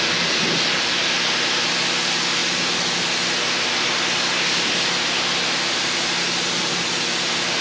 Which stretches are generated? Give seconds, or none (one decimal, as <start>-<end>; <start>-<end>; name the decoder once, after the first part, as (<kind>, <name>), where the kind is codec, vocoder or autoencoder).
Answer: none